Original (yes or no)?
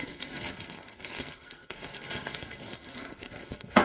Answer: no